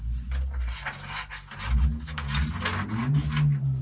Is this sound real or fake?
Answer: real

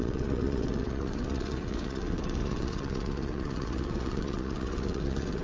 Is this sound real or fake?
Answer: fake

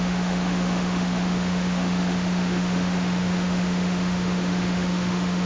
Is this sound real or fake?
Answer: fake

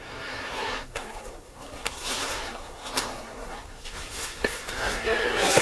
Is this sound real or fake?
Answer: fake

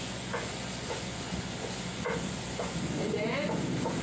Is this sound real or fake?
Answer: fake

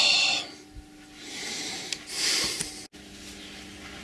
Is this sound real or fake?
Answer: real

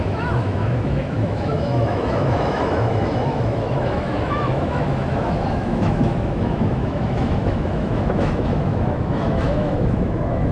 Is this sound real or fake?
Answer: fake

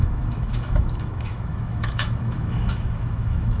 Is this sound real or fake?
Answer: fake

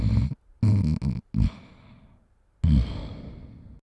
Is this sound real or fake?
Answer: real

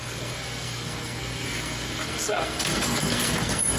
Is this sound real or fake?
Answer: fake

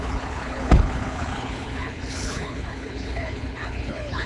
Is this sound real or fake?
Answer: fake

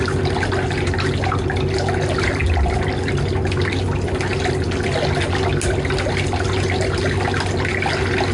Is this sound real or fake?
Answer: real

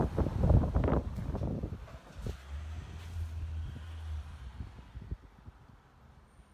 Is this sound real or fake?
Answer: real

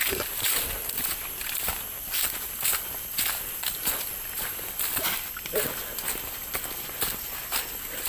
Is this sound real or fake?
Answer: real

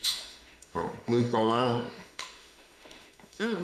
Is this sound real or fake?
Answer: fake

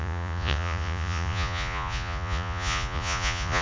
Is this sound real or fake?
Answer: fake